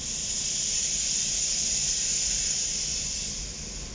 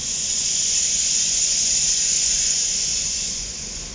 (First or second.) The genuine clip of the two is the first